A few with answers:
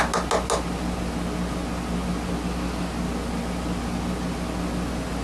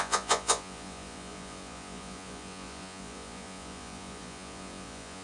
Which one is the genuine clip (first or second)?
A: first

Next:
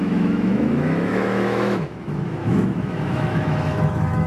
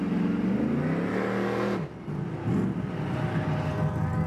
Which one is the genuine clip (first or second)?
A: second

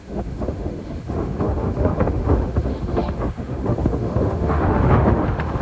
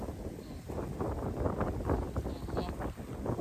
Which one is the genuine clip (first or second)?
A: second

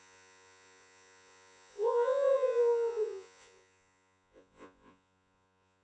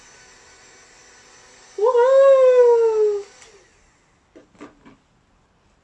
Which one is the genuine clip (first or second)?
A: second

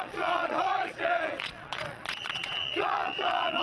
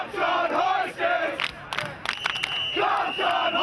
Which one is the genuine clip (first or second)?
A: second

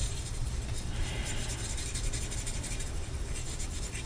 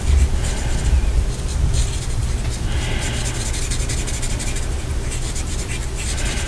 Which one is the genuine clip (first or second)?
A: second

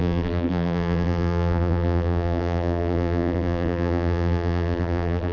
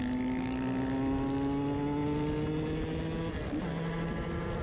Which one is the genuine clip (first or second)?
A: second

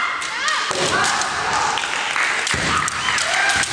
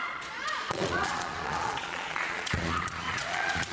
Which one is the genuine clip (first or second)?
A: first